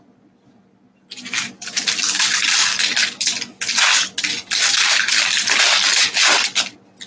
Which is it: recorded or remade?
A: recorded